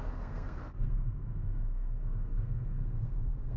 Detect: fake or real fake